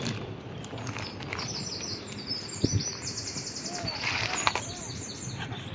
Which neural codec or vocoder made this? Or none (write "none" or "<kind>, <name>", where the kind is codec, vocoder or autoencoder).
none